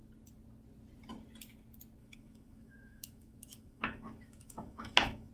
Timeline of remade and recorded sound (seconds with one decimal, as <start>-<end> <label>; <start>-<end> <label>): 0.0-2.0 recorded; 2.0-5.3 remade